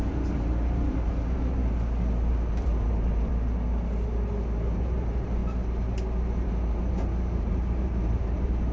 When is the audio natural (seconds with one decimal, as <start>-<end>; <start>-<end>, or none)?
1.6-2.3; 3.3-4.6; 5.4-6.2